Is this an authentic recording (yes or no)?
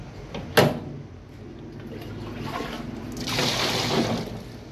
yes